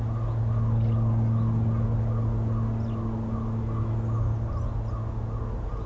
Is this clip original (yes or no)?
yes